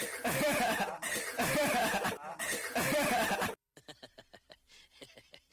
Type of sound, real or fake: real